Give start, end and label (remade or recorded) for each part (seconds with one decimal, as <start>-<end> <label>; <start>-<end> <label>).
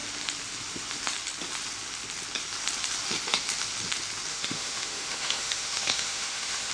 0.0-4.3 recorded; 4.3-6.7 remade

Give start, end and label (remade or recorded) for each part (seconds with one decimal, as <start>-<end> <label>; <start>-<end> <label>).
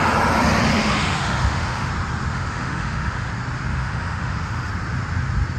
0.0-0.7 recorded; 0.7-1.9 remade; 1.9-2.3 recorded; 2.3-3.3 remade; 3.3-3.7 recorded; 3.7-4.7 remade; 4.7-5.6 recorded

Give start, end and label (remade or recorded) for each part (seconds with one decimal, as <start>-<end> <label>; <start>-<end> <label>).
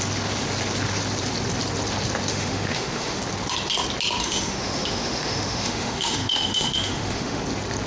0.0-2.3 recorded; 2.3-3.2 remade; 3.2-4.2 recorded; 4.2-7.4 remade; 7.4-7.9 recorded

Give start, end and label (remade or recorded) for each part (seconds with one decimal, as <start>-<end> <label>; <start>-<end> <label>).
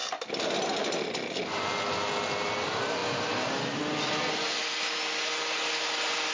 0.0-6.3 recorded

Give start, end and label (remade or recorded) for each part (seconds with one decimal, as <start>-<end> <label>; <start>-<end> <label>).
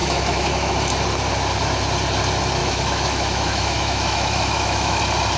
0.0-0.8 remade; 0.8-2.6 recorded; 2.6-5.0 remade; 5.0-5.4 recorded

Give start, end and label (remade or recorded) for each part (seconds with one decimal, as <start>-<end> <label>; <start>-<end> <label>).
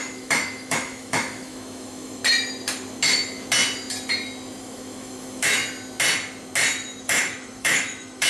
0.0-2.2 remade; 2.2-4.6 recorded; 4.6-5.6 remade; 5.6-7.0 recorded; 7.0-8.3 remade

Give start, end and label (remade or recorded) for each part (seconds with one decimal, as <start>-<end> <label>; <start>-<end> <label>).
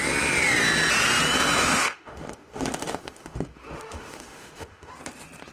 0.0-1.6 recorded; 1.6-4.9 remade; 4.9-5.5 recorded